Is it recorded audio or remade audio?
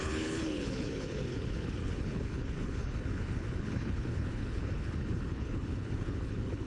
remade